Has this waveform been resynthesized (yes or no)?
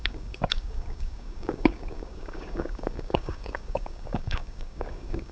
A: yes